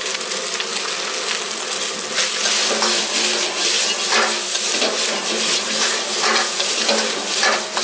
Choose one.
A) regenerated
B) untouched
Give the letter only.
B